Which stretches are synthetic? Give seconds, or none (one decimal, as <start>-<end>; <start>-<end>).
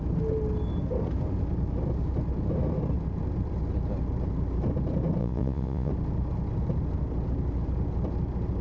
5.2-5.9